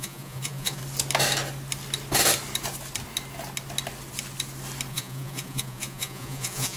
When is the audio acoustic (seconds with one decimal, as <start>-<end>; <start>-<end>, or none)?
0.8-4.9